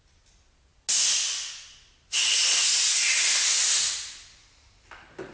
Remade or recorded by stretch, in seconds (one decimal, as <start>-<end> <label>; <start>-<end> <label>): 0.0-5.3 recorded